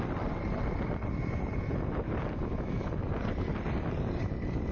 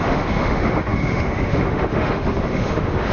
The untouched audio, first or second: first